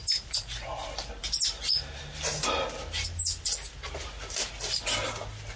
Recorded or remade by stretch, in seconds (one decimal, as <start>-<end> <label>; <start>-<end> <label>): 0.0-1.1 remade; 1.1-5.6 recorded